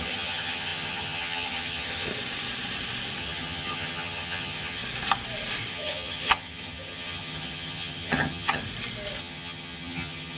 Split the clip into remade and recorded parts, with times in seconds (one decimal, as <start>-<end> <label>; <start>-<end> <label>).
0.0-2.1 remade; 2.1-3.2 recorded; 3.2-4.8 remade; 4.8-5.7 recorded; 5.7-8.6 remade; 8.6-9.2 recorded; 9.2-10.4 remade

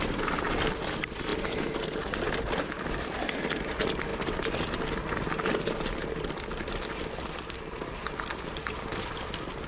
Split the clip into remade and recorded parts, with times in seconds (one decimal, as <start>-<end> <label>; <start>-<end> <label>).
0.0-9.7 recorded

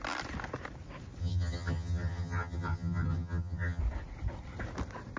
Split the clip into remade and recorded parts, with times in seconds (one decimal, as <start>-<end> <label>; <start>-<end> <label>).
0.0-1.2 recorded; 1.2-3.8 remade; 3.8-5.2 recorded

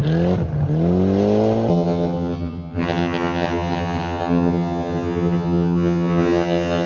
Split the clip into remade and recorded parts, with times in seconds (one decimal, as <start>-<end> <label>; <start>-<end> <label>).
0.0-1.7 recorded; 1.7-6.9 remade

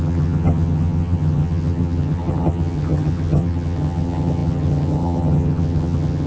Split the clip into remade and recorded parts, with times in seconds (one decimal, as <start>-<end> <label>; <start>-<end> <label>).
0.0-6.3 remade

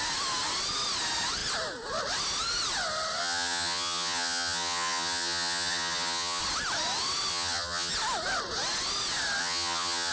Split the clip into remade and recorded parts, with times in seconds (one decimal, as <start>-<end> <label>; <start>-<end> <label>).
0.0-3.2 recorded; 3.2-6.4 remade; 6.4-7.3 recorded; 7.3-7.9 remade; 7.9-9.4 recorded; 9.4-10.1 remade

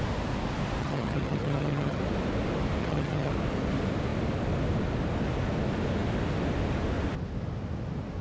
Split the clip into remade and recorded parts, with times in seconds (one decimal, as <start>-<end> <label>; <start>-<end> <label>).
0.0-0.8 recorded; 0.8-2.0 remade; 2.0-2.8 recorded; 2.8-3.3 remade; 3.3-8.2 recorded

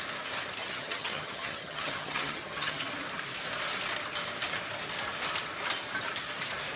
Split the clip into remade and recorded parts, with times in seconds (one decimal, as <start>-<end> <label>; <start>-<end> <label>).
0.0-0.6 recorded; 0.6-2.8 remade; 2.8-6.8 recorded